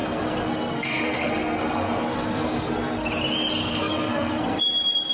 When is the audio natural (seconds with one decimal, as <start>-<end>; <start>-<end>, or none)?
3.1-3.6; 4.6-5.1